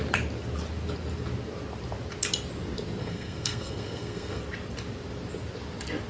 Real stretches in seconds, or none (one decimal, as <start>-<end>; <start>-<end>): 0.0-3.0; 4.4-6.1